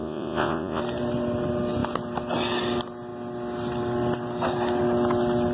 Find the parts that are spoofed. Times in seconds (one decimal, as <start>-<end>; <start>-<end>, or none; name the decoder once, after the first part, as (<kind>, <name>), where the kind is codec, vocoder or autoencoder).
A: 0.0-0.8 (vocoder, Vocos)